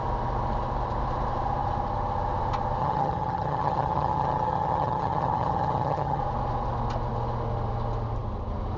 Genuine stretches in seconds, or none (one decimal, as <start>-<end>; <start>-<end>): 0.0-2.8; 6.2-8.8